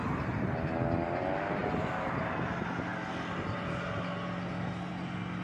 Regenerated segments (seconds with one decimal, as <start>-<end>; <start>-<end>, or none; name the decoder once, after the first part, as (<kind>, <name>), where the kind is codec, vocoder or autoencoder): none